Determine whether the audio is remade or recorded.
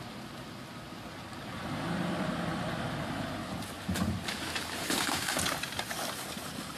recorded